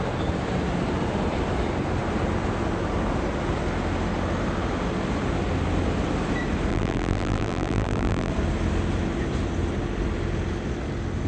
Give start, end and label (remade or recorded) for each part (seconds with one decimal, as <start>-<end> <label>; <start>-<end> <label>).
0.0-6.7 recorded; 6.7-8.3 remade; 8.3-11.3 recorded